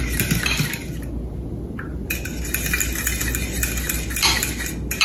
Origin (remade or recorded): recorded